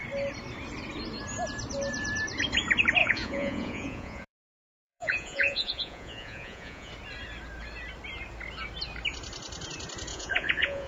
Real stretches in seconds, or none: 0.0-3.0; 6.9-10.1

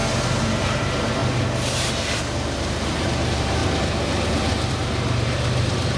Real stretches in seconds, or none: 0.0-0.6; 1.2-1.7; 3.6-4.7

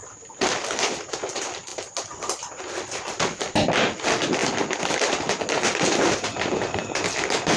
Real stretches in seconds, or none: 0.0-7.6

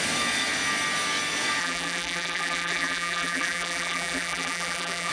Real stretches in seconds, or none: 0.0-1.6

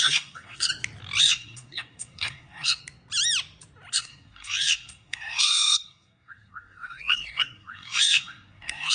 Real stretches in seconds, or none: 0.7-1.2; 2.8-3.9

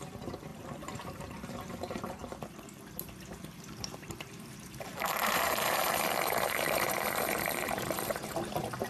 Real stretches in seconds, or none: 2.2-3.2